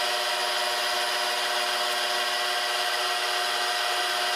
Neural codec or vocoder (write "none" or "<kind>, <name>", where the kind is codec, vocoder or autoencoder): none